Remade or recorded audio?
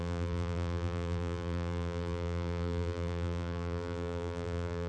remade